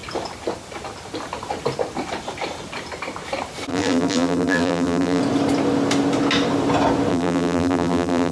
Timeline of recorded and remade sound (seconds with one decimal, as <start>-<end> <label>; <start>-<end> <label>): 0.0-3.7 recorded; 3.7-5.2 remade; 5.2-7.1 recorded; 7.1-8.3 remade